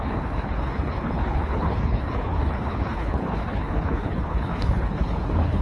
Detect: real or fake fake